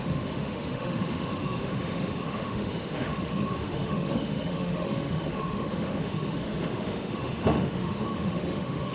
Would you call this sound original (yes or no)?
no